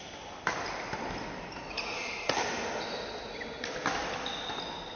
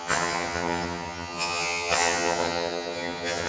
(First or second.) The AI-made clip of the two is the second